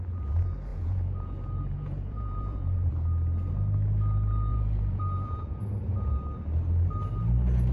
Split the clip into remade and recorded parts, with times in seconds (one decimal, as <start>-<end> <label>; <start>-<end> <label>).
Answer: 0.0-0.7 recorded; 0.7-2.9 remade; 2.9-4.5 recorded; 4.5-6.1 remade; 6.1-7.7 recorded